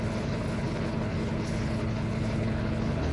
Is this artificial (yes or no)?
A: yes